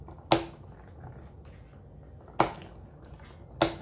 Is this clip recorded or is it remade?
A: recorded